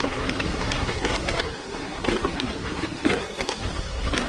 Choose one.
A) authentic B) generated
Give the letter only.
B